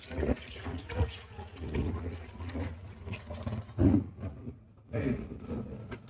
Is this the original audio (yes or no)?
no